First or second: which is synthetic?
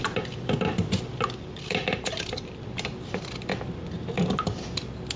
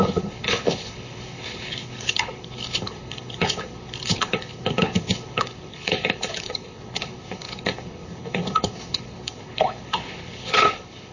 second